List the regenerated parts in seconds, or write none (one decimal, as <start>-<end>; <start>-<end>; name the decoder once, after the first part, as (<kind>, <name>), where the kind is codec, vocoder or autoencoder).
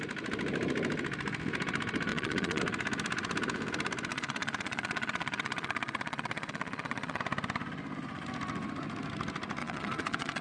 2.1-2.6 (vocoder, Vocos); 4.1-7.2; 9.6-10.4